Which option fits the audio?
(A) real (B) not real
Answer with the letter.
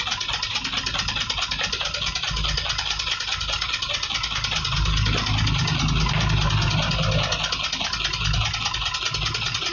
A